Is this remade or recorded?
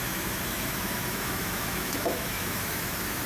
remade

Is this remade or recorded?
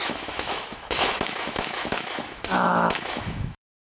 remade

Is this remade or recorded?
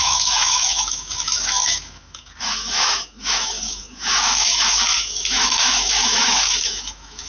remade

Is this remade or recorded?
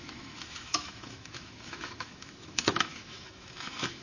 remade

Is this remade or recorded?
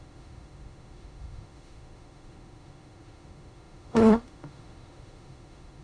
remade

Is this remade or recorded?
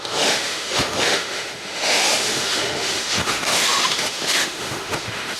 remade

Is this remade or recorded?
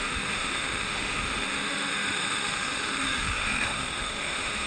remade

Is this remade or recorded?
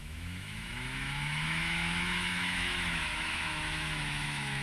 remade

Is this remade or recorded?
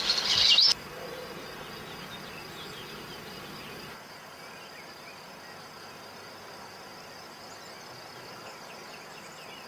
recorded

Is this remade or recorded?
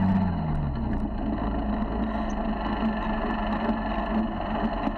recorded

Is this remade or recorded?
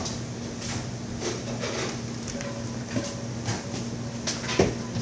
recorded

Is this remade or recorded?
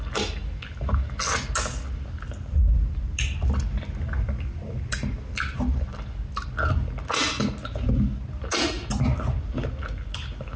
recorded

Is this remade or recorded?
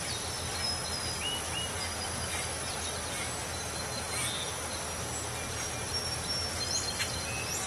recorded